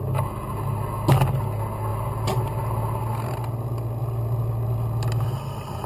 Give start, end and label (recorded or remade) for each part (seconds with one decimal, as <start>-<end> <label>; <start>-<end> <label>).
0.0-5.9 recorded